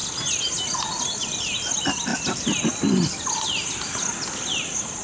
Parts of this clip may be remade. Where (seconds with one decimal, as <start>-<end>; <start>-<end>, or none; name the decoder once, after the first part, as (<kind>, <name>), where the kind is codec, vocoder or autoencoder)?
none

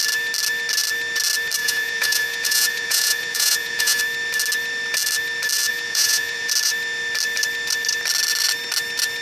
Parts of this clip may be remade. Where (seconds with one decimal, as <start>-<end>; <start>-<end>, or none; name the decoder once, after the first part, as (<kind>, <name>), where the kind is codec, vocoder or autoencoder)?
1.6-4.0 (vocoder, Vocos); 5.7-6.5